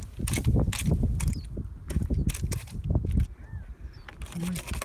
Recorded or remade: recorded